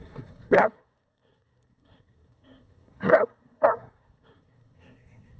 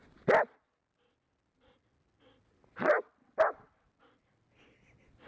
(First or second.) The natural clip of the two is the second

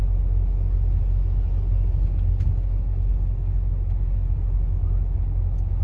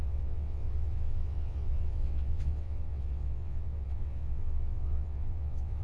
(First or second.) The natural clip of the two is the first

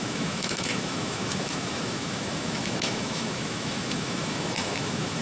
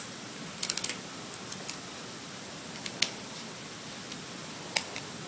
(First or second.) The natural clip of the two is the second